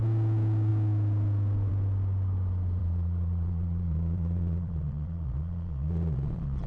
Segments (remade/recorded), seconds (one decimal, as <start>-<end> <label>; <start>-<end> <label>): 0.0-2.8 recorded; 2.8-6.7 remade